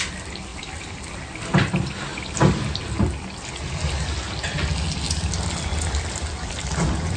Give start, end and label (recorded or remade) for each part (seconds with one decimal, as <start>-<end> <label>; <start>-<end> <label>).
0.0-0.5 recorded; 0.5-1.1 remade; 1.1-7.2 recorded